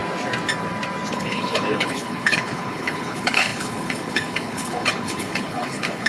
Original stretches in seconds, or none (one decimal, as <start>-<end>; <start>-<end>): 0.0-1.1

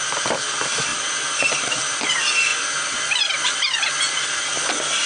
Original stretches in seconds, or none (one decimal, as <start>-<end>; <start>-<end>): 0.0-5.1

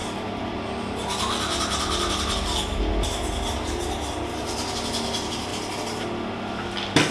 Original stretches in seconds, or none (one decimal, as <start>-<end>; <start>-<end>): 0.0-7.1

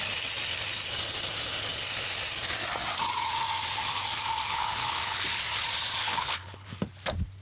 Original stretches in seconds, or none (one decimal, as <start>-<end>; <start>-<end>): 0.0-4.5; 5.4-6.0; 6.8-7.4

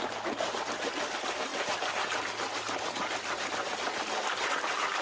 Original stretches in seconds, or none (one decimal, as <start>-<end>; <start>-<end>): 0.0-5.0